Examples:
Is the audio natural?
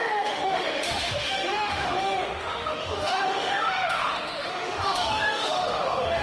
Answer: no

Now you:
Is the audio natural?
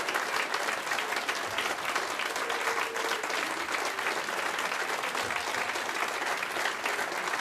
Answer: yes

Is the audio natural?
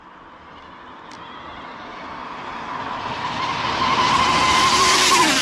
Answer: yes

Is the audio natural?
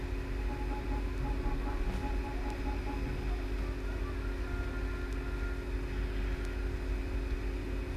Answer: yes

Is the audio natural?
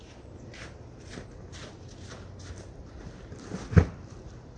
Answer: yes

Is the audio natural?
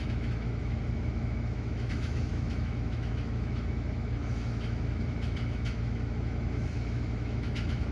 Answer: no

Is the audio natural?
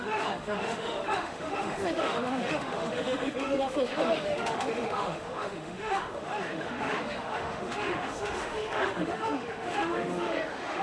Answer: no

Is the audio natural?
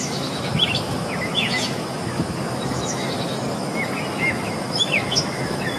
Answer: no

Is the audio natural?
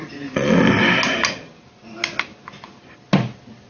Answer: yes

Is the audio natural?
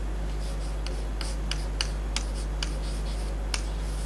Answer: yes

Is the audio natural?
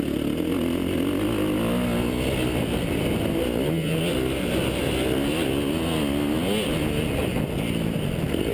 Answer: yes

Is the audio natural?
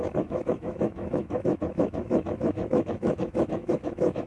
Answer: no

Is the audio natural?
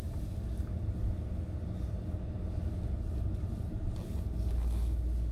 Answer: yes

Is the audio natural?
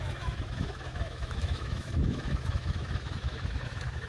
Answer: no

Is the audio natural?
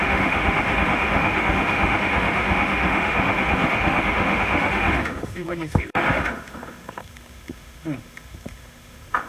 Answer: no